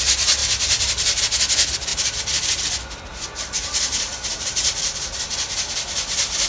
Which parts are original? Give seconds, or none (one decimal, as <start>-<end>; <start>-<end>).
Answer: 0.0-0.4; 1.2-1.9; 2.7-4.3; 5.3-6.5